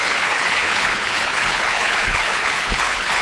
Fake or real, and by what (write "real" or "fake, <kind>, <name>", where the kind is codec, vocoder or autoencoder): fake, codec, HILCodec